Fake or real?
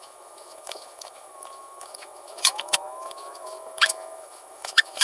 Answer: fake